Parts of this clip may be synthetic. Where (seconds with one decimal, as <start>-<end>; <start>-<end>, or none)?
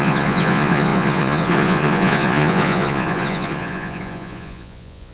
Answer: 0.0-5.1